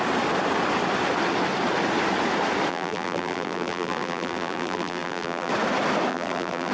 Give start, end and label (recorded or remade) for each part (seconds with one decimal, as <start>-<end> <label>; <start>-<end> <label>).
0.0-2.7 recorded; 2.7-5.5 remade; 5.5-6.1 recorded; 6.1-6.7 remade